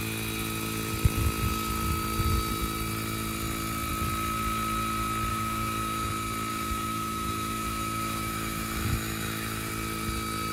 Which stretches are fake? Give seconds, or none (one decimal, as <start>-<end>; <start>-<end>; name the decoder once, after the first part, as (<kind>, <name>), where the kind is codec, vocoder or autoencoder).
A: 5.3-6.1 (autoencoder, DAC-VAE); 6.5-9.7